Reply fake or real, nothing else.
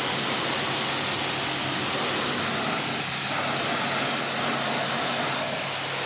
real